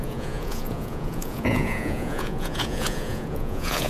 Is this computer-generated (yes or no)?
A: yes